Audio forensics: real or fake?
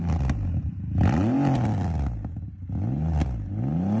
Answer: real